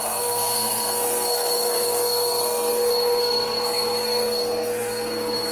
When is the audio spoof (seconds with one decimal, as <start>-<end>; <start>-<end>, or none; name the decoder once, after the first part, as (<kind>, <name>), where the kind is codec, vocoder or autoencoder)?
0.0-5.5 (codec, SNAC)